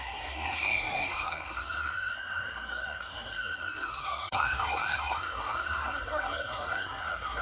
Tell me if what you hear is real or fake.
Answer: fake